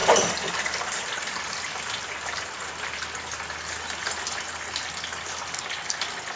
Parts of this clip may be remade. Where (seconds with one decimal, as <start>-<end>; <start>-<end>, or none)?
none